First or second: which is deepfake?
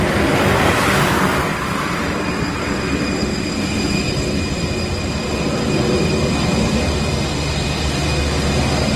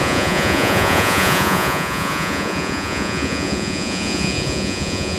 second